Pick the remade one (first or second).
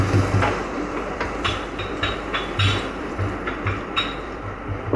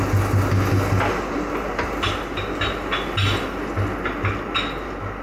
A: first